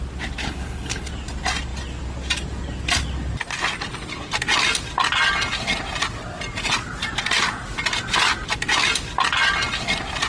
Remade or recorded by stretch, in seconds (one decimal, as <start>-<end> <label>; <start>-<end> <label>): 0.0-0.4 recorded; 0.4-1.1 remade; 1.1-10.3 recorded